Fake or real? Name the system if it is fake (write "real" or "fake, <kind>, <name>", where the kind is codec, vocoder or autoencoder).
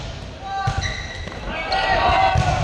real